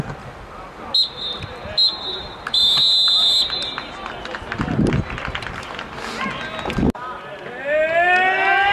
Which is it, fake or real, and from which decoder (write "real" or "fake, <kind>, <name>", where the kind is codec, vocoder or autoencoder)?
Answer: real